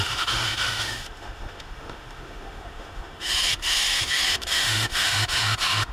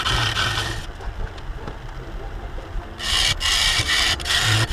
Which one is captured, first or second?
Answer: second